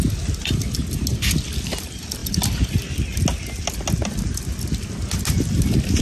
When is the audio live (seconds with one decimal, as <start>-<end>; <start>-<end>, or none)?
0.0-6.0